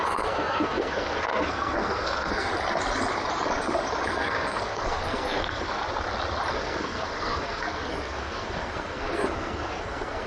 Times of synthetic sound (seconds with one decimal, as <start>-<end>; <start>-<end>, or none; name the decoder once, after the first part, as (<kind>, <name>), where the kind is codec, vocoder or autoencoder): 0.0-2.5 (codec, SNAC); 4.1-5.8; 6.5-10.3